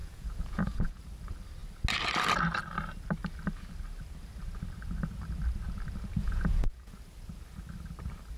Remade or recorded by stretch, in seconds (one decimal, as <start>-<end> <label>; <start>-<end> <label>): 0.0-1.0 remade; 1.0-6.2 recorded; 6.2-6.9 remade; 6.9-8.4 recorded